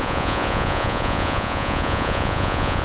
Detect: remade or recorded remade